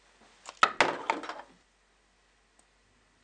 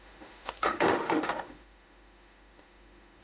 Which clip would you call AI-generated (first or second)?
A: second